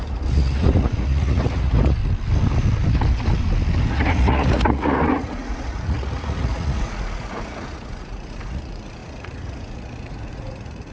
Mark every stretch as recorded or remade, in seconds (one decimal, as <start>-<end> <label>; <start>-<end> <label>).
0.0-2.0 remade; 2.0-3.9 recorded; 3.9-10.9 remade